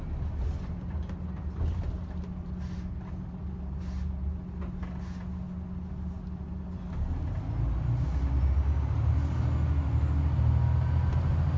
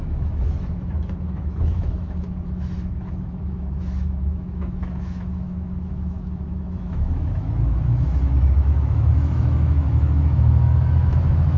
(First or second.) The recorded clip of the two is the first